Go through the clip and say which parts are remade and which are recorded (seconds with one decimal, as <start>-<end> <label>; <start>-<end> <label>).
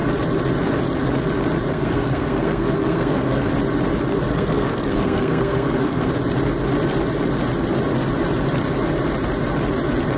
0.0-1.7 recorded; 1.7-3.5 remade; 3.5-4.3 recorded; 4.3-6.1 remade; 6.1-10.2 recorded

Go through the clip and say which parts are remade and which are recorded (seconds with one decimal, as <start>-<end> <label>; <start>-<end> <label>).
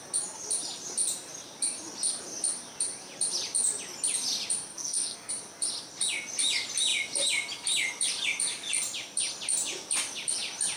0.0-4.7 recorded; 4.7-5.3 remade; 5.3-10.8 recorded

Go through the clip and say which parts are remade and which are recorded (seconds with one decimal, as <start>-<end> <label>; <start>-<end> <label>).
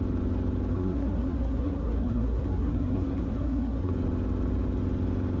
0.0-0.7 recorded; 0.7-3.9 remade; 3.9-5.4 recorded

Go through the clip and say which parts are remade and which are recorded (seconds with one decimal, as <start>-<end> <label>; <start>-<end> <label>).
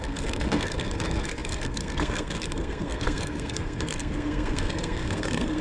0.0-5.6 remade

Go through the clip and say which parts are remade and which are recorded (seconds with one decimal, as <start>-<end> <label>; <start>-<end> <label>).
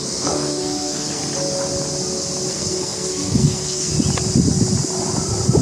0.0-1.2 remade; 1.2-2.5 recorded; 2.5-3.9 remade; 3.9-5.6 recorded